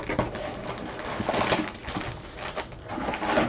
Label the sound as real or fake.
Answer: real